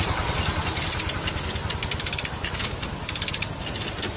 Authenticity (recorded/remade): recorded